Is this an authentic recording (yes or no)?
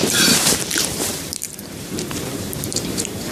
no